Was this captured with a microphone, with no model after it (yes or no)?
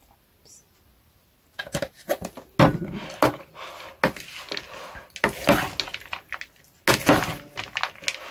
yes